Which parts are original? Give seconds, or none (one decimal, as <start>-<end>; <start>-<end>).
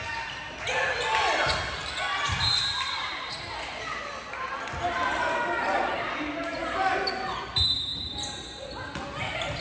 0.0-9.6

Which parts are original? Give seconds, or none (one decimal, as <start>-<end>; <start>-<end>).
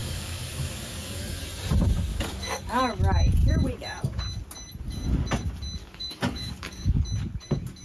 1.4-2.1; 2.8-5.8; 7.0-7.8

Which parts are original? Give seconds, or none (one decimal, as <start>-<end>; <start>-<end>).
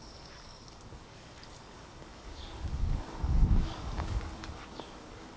none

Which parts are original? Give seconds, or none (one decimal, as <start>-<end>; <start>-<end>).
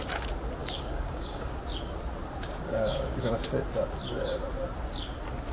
0.0-0.6; 1.6-2.7; 3.3-5.5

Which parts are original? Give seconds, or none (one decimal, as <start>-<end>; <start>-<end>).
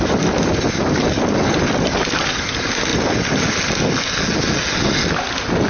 0.0-5.7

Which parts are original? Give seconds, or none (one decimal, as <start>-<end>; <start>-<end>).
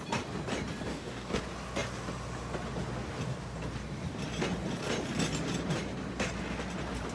0.0-0.9; 1.4-7.1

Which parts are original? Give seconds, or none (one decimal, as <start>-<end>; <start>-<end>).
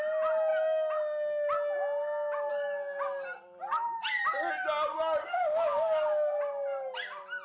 0.0-5.2; 6.4-7.4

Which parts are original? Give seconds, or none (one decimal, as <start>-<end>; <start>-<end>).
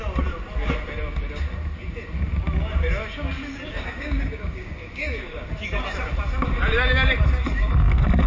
0.0-3.7; 5.5-8.3